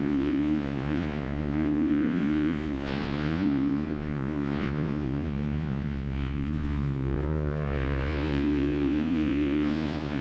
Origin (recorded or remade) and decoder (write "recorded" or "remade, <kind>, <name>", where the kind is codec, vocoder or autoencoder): remade, vocoder, Vocos